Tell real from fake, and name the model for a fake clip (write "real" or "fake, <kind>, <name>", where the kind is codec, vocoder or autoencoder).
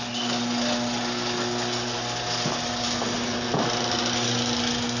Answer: real